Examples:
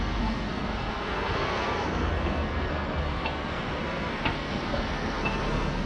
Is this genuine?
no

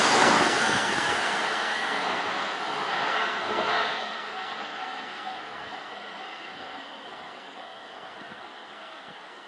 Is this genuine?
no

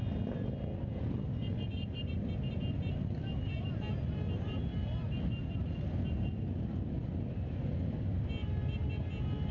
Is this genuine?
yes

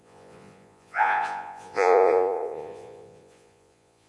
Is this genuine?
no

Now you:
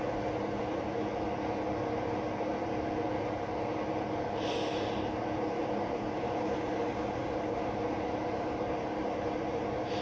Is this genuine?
yes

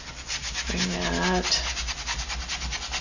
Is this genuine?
yes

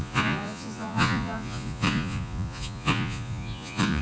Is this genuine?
no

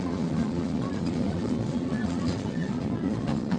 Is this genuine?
no